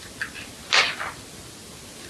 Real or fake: real